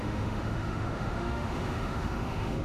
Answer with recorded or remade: remade